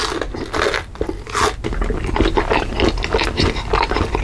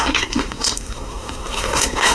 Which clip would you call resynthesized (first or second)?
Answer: second